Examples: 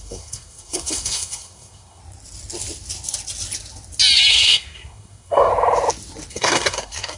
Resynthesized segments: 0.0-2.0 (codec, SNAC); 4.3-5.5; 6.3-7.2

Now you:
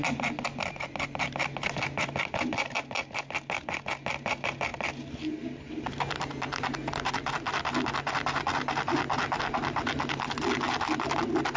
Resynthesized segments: none

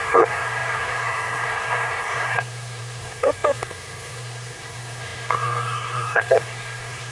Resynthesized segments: 0.0-7.1 (codec, SNAC)

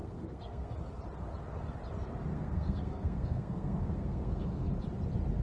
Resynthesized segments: 0.0-0.7 (codec, SNAC); 2.3-4.7

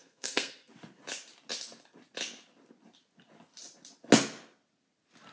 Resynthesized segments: 0.0-0.7 (codec, SNAC)